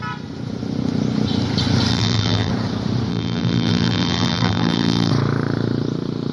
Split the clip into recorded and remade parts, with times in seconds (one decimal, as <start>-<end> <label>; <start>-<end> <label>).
0.0-1.9 recorded; 1.9-2.5 remade; 2.5-3.1 recorded; 3.1-5.1 remade; 5.1-6.3 recorded